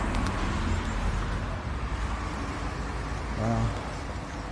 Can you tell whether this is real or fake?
real